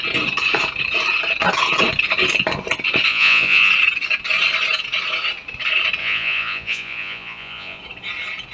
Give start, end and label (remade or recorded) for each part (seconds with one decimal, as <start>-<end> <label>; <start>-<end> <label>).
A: 0.0-3.1 recorded; 3.1-3.7 remade; 3.7-6.0 recorded; 6.0-7.8 remade; 7.8-8.5 recorded

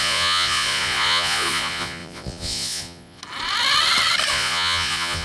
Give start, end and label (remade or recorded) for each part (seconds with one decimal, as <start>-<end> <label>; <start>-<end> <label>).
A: 0.0-3.2 remade; 3.2-4.3 recorded; 4.3-5.2 remade

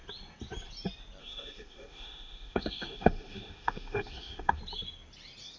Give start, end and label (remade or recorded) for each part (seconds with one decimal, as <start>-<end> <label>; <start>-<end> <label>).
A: 0.0-1.2 recorded; 1.2-4.6 remade; 4.6-5.6 recorded

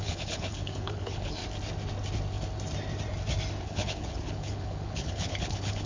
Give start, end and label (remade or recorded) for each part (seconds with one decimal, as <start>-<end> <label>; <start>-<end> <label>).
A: 0.0-1.4 remade; 1.4-3.6 recorded; 3.6-5.9 remade